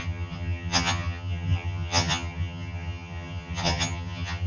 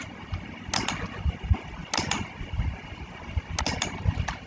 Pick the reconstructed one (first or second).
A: first